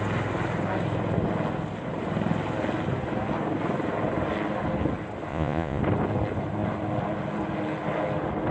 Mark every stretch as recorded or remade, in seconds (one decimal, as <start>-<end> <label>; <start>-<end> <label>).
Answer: 0.0-5.3 recorded; 5.3-5.8 remade; 5.8-8.5 recorded